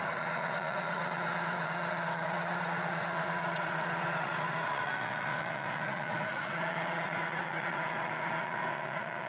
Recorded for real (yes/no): no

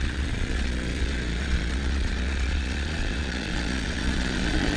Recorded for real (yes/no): no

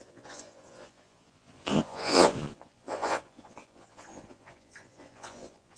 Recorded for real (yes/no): no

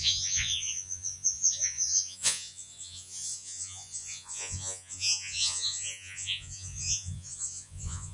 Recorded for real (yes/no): no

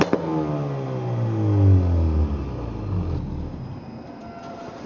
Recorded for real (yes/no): yes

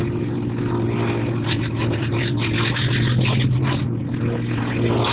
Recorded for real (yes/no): yes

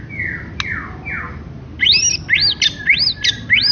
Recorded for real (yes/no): yes